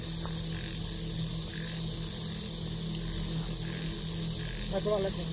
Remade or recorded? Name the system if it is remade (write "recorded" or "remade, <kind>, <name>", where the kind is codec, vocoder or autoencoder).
recorded